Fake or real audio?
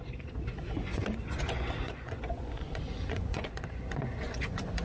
fake